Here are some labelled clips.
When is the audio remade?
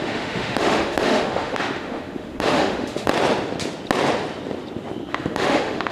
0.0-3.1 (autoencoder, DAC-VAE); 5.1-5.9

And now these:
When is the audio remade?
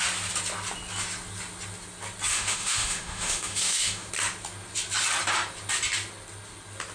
2.3-4.1 (autoencoder, DAC-VAE)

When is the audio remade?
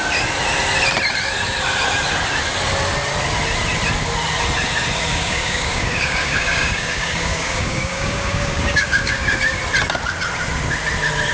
5.1-9.6 (codec, DAC)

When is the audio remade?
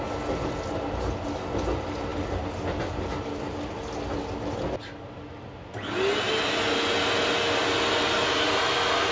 none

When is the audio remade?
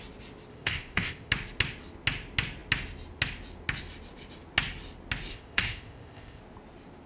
0.5-1.3 (codec, ZipCodec); 5.3-6.4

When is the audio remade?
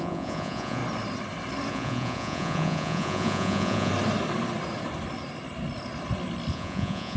0.0-0.8 (vocoder, Vocos); 1.7-3.9; 6.5-7.2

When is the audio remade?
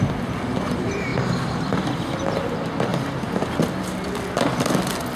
1.1-1.9 (vocoder, BigVGAN v2); 2.9-3.6